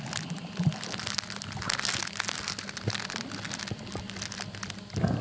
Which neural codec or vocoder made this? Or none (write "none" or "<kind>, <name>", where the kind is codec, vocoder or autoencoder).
none